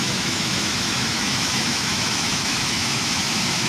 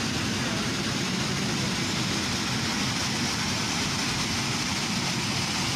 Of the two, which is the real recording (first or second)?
second